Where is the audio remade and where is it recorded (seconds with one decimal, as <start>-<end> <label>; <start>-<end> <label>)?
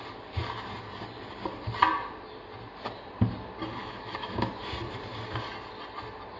0.0-3.8 recorded; 3.8-4.5 remade; 4.5-6.4 recorded